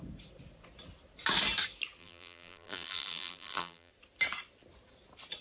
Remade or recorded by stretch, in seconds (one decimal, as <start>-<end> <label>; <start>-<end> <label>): 0.0-2.0 recorded; 2.0-3.9 remade; 3.9-5.4 recorded